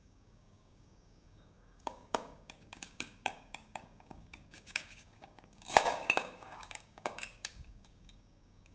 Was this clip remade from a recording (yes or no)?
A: yes